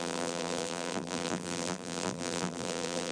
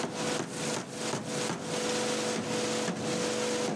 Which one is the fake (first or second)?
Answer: first